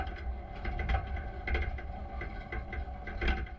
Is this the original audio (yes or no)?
yes